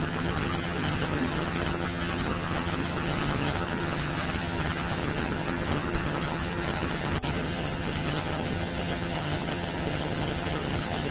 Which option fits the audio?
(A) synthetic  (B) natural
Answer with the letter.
A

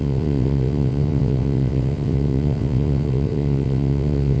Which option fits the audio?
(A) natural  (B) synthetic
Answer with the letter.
B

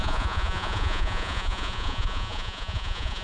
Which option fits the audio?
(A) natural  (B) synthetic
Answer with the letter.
B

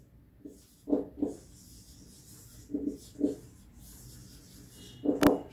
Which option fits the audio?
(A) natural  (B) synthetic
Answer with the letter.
A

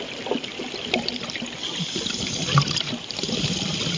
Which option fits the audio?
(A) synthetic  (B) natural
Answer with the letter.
B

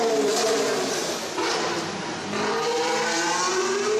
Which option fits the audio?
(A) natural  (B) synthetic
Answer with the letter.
A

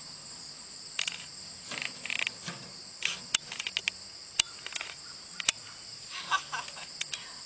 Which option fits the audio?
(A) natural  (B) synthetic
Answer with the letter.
A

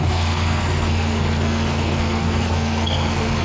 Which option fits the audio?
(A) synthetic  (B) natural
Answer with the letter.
A